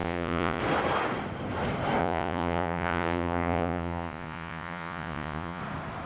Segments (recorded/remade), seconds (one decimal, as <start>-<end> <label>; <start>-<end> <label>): 0.0-0.6 remade; 0.6-2.0 recorded; 2.0-5.6 remade; 5.6-6.1 recorded